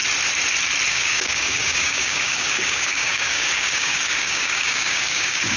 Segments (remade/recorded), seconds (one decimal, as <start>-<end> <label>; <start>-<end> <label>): 0.0-0.9 recorded; 0.9-5.6 remade